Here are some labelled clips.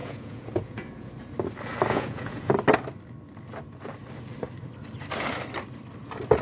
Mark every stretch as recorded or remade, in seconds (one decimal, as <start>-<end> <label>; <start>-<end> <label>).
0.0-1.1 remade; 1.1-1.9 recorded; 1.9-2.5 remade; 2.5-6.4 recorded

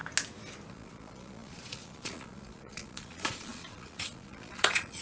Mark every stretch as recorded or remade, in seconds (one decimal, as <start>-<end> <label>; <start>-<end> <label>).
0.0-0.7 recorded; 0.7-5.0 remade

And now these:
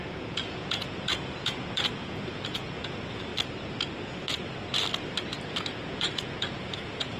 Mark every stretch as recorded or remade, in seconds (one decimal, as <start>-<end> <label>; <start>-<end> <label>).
0.0-3.3 remade; 3.3-5.7 recorded; 5.7-7.2 remade